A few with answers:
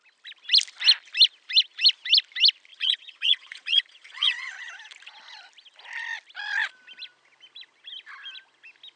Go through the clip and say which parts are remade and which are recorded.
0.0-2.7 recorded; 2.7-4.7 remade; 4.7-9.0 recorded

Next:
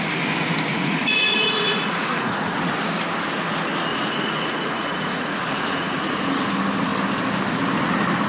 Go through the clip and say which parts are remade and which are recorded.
0.0-0.7 recorded; 0.7-2.7 remade; 2.7-3.9 recorded; 3.9-6.2 remade; 6.2-8.3 recorded

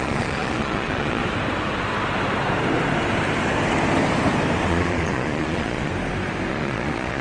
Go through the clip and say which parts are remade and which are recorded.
0.0-1.2 remade; 1.2-4.7 recorded; 4.7-5.9 remade; 5.9-6.5 recorded; 6.5-7.2 remade

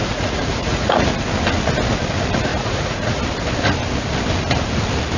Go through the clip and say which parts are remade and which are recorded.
0.0-1.1 remade; 1.1-2.5 recorded; 2.5-3.2 remade; 3.2-5.2 recorded